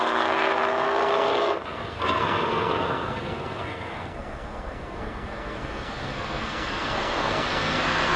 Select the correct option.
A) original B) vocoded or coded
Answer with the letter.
B